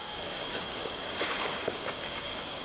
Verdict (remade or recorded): remade